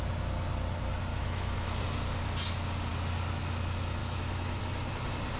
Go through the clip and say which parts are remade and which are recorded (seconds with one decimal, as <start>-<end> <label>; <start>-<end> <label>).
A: 0.0-1.1 recorded; 1.1-1.8 remade; 1.8-4.0 recorded; 4.0-4.6 remade; 4.6-5.4 recorded